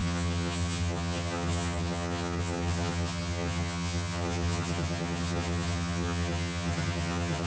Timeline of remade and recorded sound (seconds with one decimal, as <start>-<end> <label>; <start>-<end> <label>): 0.0-7.5 remade